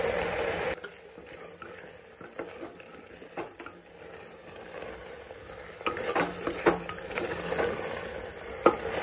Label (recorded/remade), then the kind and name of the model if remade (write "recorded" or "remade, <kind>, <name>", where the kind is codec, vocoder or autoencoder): recorded